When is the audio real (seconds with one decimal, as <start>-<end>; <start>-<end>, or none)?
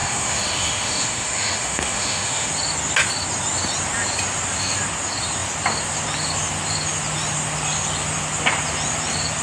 2.5-9.4